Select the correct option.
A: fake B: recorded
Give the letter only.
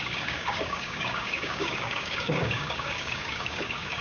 A